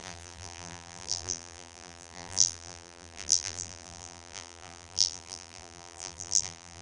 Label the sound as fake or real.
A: fake